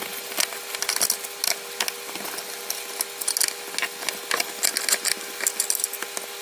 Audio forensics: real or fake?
real